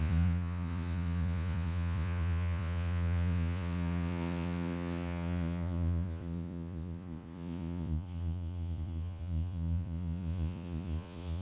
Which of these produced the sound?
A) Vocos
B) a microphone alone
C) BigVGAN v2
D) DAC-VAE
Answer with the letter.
A